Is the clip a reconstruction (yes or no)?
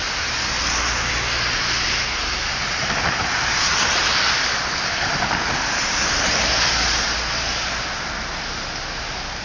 no